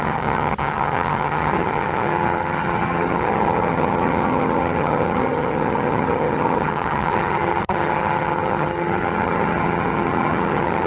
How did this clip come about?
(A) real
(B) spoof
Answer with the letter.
B